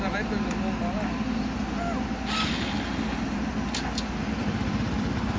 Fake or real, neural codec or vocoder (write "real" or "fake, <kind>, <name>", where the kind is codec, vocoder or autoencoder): real